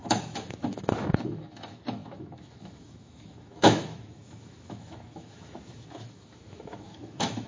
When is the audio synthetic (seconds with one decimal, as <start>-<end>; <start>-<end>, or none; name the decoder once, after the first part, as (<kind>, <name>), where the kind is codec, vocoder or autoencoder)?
0.0-7.5 (autoencoder, DAC-VAE)